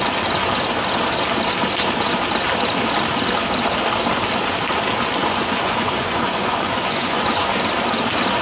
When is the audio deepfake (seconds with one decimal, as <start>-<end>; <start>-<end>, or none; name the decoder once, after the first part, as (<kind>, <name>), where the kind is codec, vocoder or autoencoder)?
5.2-7.4 (vocoder, Vocos)